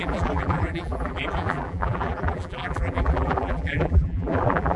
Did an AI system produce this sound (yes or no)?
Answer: yes